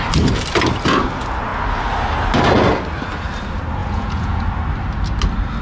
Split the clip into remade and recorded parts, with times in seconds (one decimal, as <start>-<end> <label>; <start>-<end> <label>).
0.0-3.8 recorded; 3.8-4.4 remade; 4.4-5.6 recorded